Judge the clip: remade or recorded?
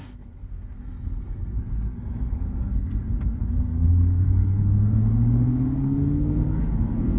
remade